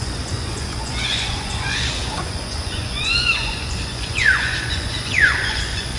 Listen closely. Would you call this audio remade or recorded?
remade